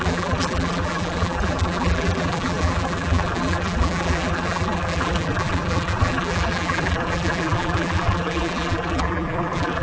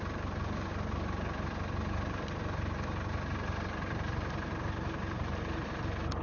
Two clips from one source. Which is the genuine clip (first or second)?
second